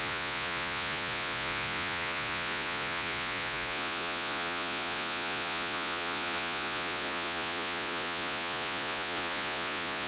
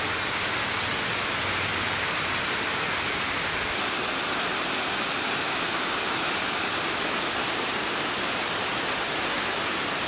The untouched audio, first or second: second